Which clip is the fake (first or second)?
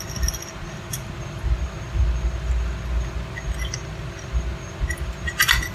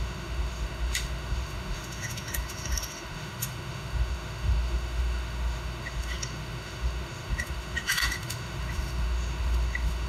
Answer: second